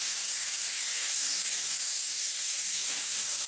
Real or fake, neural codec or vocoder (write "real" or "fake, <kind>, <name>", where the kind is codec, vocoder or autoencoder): fake, codec, DAC